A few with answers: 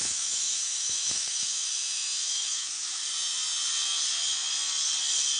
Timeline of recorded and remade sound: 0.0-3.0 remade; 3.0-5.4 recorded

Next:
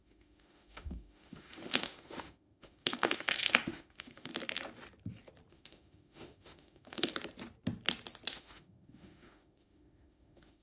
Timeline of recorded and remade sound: 0.0-4.3 remade; 4.3-5.5 recorded; 5.5-7.1 remade; 7.1-8.3 recorded; 8.3-10.6 remade

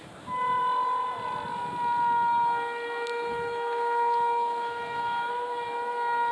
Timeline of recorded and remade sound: 0.0-3.1 recorded; 3.1-5.3 remade; 5.3-6.3 recorded

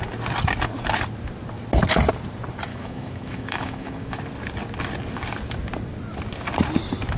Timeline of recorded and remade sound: 0.0-2.7 recorded; 2.7-4.2 remade; 4.2-7.2 recorded

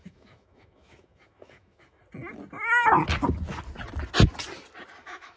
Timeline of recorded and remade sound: 0.0-2.0 remade; 2.0-5.0 recorded; 5.0-5.4 remade

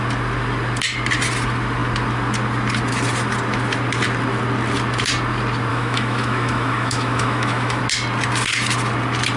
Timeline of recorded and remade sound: 0.0-5.7 recorded; 5.7-7.8 remade; 7.8-9.4 recorded